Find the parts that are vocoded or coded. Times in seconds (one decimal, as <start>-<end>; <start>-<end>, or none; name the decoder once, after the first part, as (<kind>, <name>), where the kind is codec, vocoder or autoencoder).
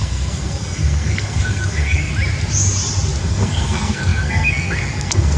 0.0-2.1 (codec, SNAC); 3.2-5.4